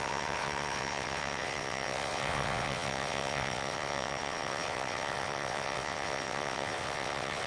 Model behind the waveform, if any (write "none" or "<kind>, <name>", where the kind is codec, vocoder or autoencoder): vocoder, WaveNeXt